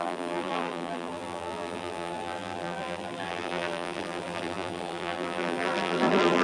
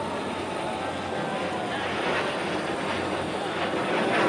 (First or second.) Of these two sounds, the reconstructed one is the first